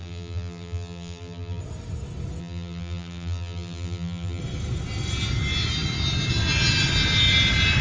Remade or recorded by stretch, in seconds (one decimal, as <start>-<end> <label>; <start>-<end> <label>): 0.0-1.6 remade; 1.6-2.4 recorded; 2.4-4.4 remade; 4.4-7.8 recorded